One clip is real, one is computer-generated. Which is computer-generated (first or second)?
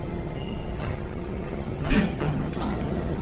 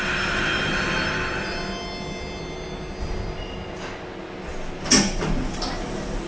first